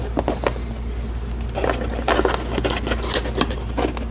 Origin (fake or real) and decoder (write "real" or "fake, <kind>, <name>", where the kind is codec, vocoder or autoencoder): real